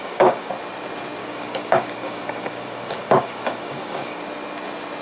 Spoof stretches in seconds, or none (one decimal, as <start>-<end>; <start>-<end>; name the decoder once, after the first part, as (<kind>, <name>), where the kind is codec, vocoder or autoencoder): 0.0-0.5 (codec, DAC); 1.2-4.2